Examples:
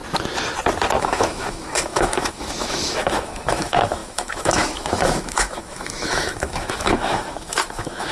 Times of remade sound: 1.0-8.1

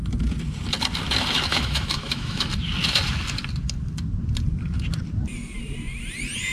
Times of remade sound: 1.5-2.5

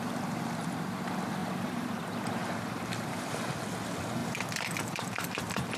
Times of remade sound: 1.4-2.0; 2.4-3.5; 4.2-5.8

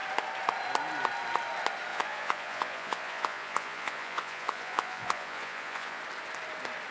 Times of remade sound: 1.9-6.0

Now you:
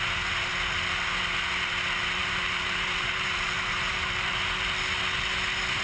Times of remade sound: 2.2-4.4